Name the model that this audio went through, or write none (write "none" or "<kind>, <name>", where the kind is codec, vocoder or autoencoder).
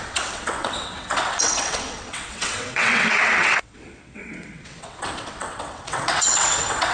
vocoder, WaveNeXt